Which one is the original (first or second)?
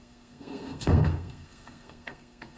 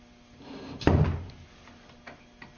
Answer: second